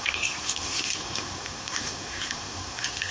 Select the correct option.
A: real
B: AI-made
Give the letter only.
B